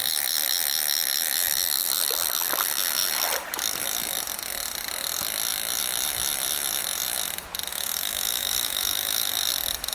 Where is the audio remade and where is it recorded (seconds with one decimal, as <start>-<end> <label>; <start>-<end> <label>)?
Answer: 0.0-7.7 recorded; 7.7-9.3 remade; 9.3-9.9 recorded